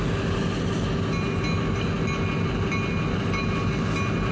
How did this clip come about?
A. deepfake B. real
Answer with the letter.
B